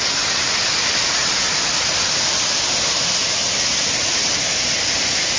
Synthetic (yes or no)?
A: no